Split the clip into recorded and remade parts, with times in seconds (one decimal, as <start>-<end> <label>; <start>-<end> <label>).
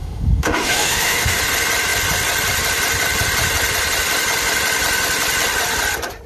0.0-1.4 remade; 1.4-6.3 recorded